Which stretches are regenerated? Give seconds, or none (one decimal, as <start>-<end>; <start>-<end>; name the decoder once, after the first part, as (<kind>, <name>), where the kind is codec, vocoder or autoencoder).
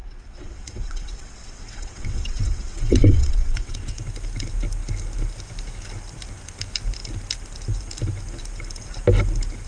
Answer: 0.0-4.0 (vocoder, WaveNeXt)